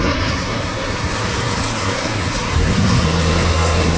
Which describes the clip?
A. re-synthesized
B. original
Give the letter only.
A